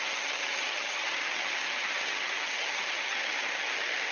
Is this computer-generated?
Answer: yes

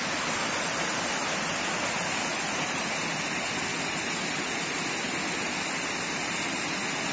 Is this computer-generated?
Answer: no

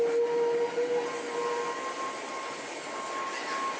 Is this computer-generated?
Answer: no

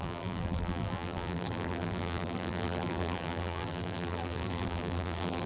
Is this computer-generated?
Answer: yes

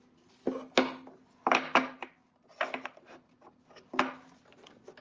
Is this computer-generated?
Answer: no